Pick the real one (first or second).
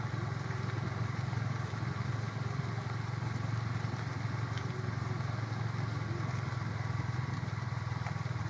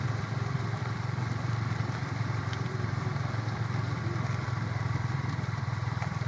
first